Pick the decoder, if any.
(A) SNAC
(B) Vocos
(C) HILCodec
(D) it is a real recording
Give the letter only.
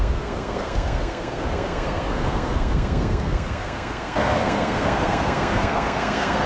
A